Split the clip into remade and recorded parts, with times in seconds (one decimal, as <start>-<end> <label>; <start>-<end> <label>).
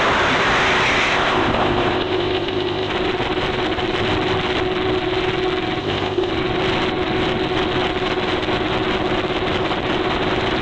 0.0-1.0 recorded; 1.0-2.9 remade; 2.9-5.8 recorded; 5.8-6.3 remade; 6.3-10.6 recorded